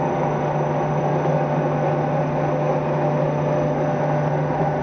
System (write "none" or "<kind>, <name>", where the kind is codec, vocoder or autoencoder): none